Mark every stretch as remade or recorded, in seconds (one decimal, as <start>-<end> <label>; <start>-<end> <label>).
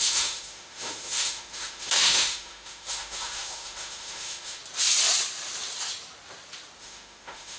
0.0-4.6 remade; 4.6-6.8 recorded; 6.8-7.6 remade